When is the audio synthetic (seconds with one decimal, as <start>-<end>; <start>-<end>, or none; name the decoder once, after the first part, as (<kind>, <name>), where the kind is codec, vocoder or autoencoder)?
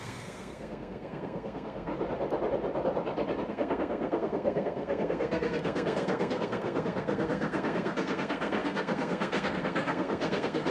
0.0-1.9 (codec, SNAC); 3.5-10.7